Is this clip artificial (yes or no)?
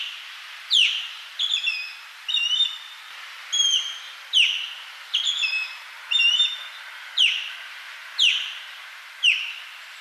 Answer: no